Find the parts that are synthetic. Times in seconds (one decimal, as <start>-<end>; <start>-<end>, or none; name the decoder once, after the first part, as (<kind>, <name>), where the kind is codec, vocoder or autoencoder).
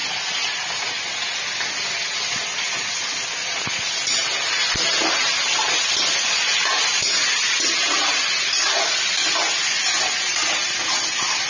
none